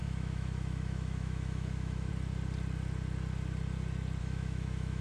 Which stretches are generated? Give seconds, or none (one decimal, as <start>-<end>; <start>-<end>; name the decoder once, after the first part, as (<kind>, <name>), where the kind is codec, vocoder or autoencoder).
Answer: 0.0-2.1 (autoencoder, DAC-VAE); 4.2-5.0